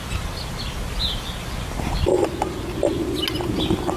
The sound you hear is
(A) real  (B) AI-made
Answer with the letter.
A